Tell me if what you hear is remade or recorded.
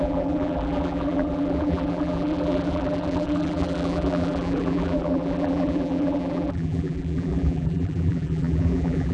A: remade